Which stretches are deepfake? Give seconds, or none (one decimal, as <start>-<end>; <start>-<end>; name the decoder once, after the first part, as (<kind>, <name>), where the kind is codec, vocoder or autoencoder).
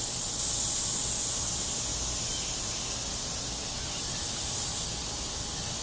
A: none